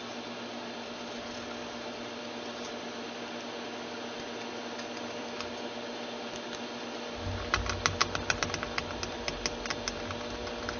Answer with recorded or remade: recorded